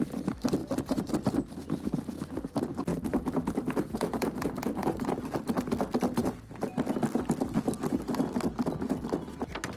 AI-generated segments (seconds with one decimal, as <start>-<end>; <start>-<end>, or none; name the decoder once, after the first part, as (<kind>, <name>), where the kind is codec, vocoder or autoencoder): 0.6-1.1 (vocoder, BigVGAN v2); 2.9-5.2